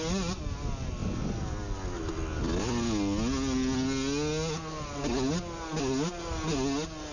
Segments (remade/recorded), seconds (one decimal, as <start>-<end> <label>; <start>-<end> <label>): 0.0-7.1 recorded